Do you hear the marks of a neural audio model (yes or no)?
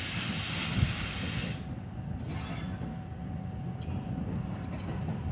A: no